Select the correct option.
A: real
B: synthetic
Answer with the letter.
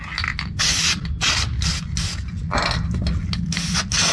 A